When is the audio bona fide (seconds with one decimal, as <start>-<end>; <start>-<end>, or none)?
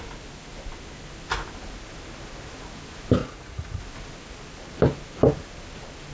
0.0-3.2; 3.8-6.1